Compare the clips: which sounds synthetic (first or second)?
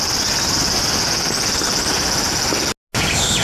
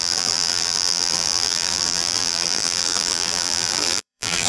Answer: second